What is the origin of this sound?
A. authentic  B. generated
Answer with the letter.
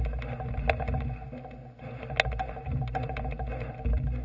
A